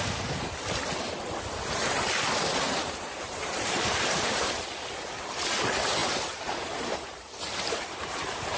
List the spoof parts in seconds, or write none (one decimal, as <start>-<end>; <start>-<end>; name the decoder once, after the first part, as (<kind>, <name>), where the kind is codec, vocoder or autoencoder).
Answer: 3.4-4.2 (vocoder, BigVGAN v2); 6.0-8.6